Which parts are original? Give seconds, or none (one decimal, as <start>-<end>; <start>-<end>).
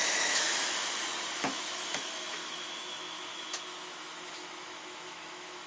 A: 0.5-1.4